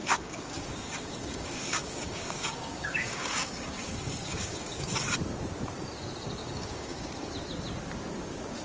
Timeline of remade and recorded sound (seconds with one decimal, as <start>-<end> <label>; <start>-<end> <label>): 0.0-5.0 remade; 5.0-6.4 recorded; 6.4-7.1 remade; 7.1-8.6 recorded